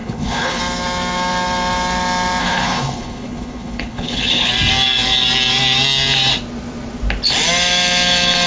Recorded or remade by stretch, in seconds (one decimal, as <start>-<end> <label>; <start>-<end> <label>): 0.0-0.6 remade; 0.6-2.4 recorded; 2.4-4.5 remade; 4.5-8.5 recorded